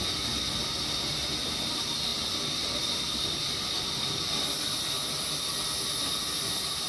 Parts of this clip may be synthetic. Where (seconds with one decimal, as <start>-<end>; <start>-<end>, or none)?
none

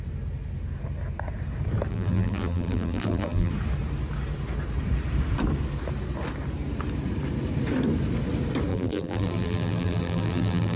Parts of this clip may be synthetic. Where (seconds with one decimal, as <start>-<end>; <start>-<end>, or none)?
1.9-3.5; 8.7-10.8